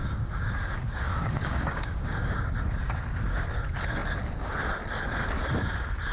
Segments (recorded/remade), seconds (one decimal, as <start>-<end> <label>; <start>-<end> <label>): 0.0-3.6 remade; 3.6-6.1 recorded